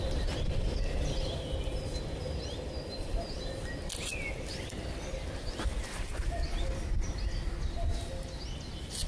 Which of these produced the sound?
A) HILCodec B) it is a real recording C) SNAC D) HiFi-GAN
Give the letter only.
B